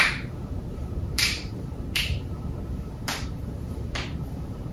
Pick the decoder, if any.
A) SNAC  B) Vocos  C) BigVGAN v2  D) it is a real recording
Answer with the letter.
C